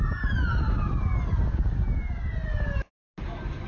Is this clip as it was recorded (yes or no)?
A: yes